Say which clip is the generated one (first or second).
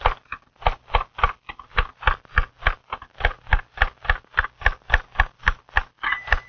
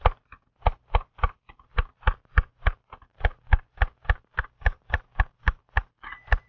second